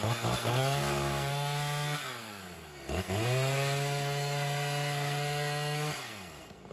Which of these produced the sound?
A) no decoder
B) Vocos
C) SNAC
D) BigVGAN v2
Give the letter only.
C